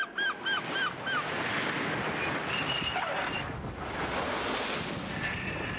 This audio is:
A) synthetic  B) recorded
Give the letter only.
B